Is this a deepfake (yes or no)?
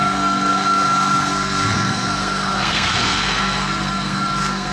yes